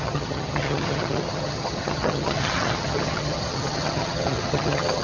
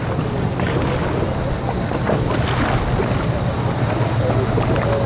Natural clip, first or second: second